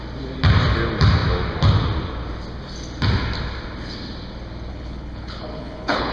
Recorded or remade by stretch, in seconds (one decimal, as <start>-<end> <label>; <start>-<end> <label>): 0.0-4.7 recorded; 4.7-6.1 remade